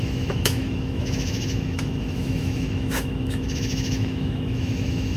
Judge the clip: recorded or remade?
remade